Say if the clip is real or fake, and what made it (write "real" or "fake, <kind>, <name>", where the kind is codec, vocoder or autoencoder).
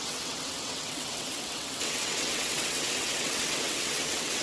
fake, vocoder, WaveNeXt